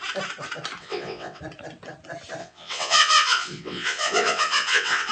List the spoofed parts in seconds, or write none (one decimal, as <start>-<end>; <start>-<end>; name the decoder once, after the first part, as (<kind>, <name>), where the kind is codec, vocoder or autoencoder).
0.8-1.4 (vocoder, WaveNeXt); 2.4-5.1